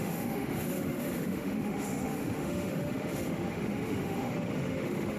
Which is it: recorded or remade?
remade